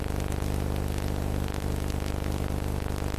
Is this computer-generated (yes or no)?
no